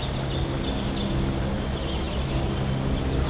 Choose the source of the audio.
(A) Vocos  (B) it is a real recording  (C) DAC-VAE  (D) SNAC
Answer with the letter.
B